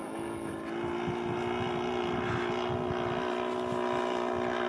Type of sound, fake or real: real